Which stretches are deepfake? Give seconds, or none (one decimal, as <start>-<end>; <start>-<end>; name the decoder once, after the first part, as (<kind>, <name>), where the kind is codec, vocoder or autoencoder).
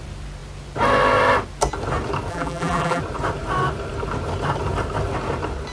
2.3-3.0 (vocoder, BigVGAN v2)